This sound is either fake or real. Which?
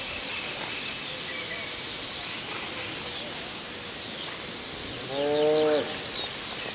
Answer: real